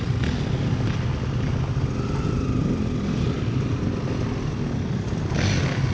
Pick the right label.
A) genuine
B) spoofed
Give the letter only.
A